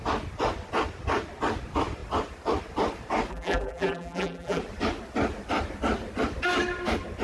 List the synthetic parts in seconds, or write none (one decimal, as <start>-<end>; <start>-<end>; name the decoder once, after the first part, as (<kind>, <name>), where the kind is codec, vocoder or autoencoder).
3.3-4.6 (vocoder, BigVGAN v2)